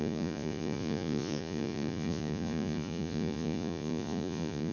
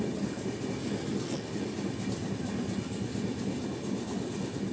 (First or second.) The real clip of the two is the second